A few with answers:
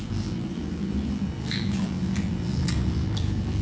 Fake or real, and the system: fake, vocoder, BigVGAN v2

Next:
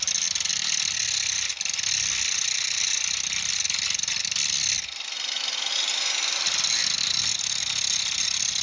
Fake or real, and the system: real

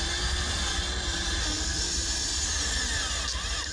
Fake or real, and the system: real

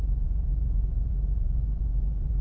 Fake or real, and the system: fake, vocoder, Vocos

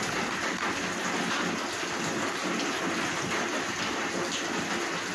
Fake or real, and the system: real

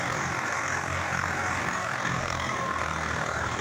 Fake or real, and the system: fake, codec, DAC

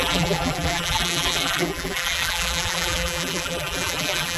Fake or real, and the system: fake, vocoder, BigVGAN v2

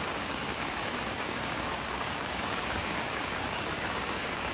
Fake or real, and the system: fake, codec, DAC